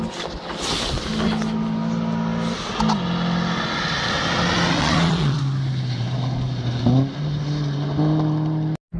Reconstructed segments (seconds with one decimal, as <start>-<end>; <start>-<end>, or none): 4.8-5.4